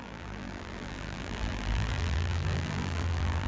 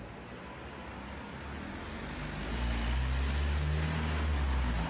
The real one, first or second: second